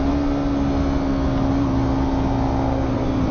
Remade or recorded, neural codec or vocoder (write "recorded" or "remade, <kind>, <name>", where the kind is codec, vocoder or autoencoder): recorded